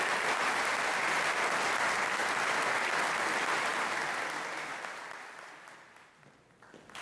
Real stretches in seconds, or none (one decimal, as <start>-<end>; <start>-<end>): 0.0-7.0